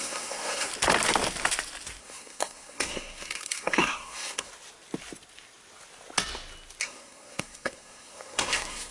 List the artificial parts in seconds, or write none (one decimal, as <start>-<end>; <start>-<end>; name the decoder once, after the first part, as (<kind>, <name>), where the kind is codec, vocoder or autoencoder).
0.0-0.7 (codec, SNAC); 2.0-4.5; 6.8-8.9